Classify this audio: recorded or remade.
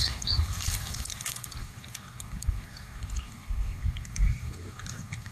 remade